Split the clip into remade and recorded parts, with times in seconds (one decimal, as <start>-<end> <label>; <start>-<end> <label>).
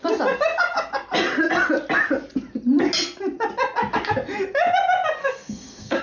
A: 0.0-5.2 recorded; 5.2-6.0 remade